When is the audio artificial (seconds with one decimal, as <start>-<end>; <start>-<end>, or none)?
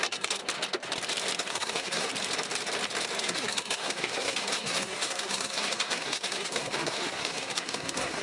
0.0-0.4; 1.5-2.1; 3.2-8.2